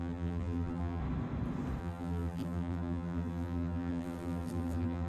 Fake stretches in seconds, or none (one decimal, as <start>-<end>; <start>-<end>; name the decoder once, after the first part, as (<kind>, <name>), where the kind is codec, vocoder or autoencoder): 0.0-1.0 (vocoder, BigVGAN v2); 1.8-5.1